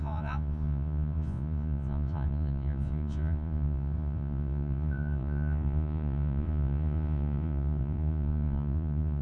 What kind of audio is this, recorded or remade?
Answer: remade